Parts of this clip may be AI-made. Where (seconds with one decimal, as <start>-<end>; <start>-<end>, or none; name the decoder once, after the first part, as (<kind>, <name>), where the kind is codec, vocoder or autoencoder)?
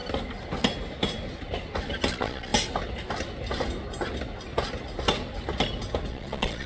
2.1-2.5 (vocoder, Vocos); 6.1-6.7